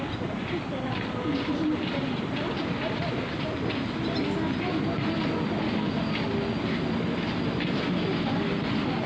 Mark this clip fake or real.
real